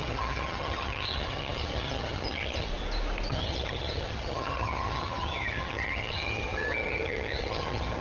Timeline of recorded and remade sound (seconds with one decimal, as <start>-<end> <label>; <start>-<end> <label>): 0.0-2.7 remade; 2.7-3.3 recorded; 3.3-8.0 remade